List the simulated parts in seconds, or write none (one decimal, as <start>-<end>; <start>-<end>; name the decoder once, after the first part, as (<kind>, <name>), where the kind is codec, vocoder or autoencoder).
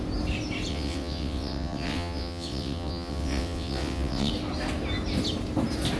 0.7-4.3 (vocoder, WaveNeXt)